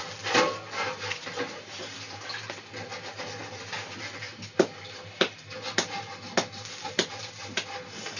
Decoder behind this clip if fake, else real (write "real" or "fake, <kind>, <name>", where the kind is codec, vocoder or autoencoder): real